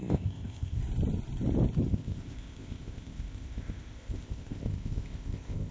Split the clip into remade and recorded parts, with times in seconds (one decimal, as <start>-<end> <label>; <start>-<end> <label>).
0.0-0.8 remade; 0.8-1.9 recorded; 1.9-5.7 remade

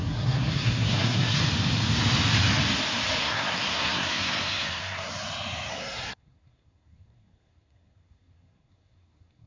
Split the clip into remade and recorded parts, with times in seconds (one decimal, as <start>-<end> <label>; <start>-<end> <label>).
0.0-1.4 remade; 1.4-3.2 recorded; 3.2-5.1 remade; 5.1-5.7 recorded; 5.7-9.5 remade

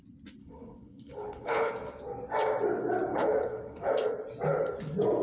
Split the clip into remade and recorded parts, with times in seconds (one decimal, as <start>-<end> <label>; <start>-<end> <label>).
0.0-0.4 recorded; 0.4-1.7 remade; 1.7-3.1 recorded; 3.1-3.9 remade; 3.9-5.2 recorded

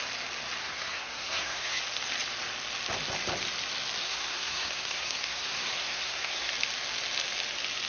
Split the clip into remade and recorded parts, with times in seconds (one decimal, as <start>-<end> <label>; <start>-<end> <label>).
0.0-0.6 recorded; 0.6-1.8 remade; 1.8-4.0 recorded; 4.0-6.5 remade; 6.5-7.9 recorded